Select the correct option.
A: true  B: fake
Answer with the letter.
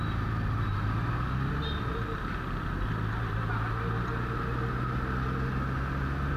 A